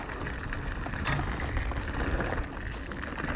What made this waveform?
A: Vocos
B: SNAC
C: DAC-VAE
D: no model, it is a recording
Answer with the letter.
D